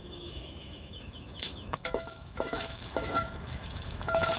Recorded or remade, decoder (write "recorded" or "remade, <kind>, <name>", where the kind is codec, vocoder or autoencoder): remade, autoencoder, DAC-VAE